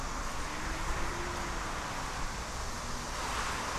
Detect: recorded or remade recorded